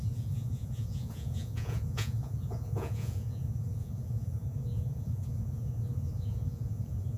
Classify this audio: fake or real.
fake